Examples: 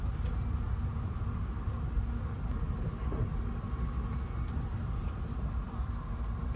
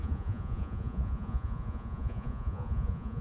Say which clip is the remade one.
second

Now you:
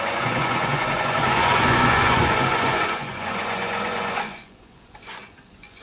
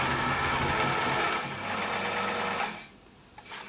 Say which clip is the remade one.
first